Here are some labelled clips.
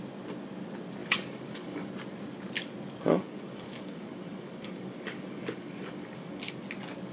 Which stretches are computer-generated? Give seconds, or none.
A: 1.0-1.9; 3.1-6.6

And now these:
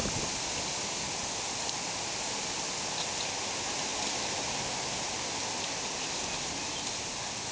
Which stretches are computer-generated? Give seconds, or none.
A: none